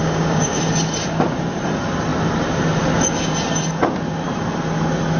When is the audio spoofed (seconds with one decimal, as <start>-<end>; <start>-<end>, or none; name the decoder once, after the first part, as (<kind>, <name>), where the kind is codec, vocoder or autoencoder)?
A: 0.0-0.6 (codec, DAC)